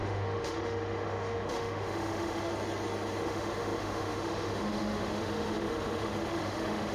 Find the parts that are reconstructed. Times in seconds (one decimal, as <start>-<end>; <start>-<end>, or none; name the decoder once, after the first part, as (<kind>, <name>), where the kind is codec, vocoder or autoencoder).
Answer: 0.0-2.5 (autoencoder, DAC-VAE); 3.2-6.9